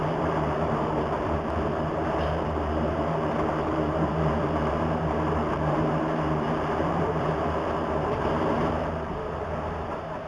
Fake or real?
fake